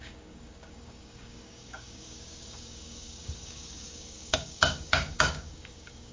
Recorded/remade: remade